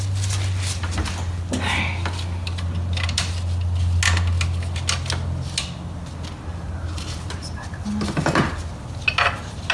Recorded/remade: recorded